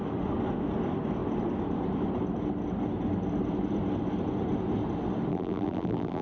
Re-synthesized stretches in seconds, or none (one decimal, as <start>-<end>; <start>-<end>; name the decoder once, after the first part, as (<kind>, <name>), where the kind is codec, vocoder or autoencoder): 5.3-6.2 (vocoder, BigVGAN v2)